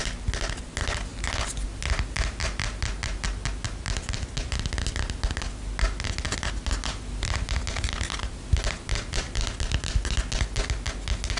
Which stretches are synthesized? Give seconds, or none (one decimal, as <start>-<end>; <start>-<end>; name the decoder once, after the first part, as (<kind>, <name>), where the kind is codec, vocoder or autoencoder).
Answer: none